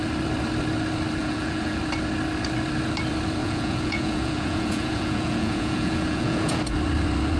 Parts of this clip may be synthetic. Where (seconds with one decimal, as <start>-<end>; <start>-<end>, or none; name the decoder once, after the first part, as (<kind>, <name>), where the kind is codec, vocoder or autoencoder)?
1.2-1.8 (vocoder, Vocos); 3.4-6.6